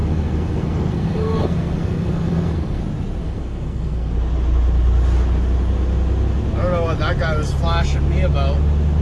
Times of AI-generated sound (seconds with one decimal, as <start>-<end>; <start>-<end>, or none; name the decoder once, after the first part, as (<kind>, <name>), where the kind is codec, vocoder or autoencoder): 0.0-2.8 (codec, SNAC); 3.2-4.1